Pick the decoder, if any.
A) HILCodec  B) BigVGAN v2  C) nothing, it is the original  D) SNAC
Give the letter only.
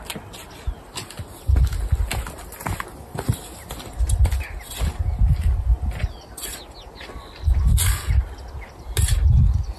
C